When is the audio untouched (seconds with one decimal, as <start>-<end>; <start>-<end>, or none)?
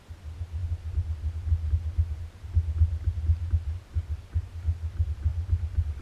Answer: 0.0-6.0